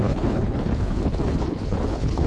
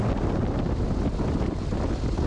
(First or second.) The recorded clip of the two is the second